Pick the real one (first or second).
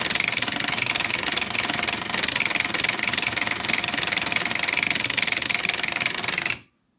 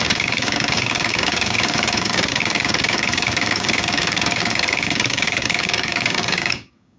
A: first